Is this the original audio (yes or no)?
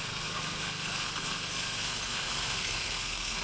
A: no